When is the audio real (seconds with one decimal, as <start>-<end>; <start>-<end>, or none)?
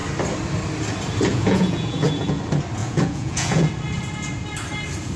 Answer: 0.0-1.3; 2.4-2.8; 3.7-5.2